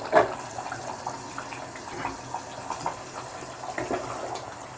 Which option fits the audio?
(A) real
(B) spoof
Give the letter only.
A